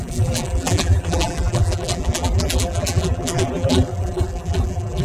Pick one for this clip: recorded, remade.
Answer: remade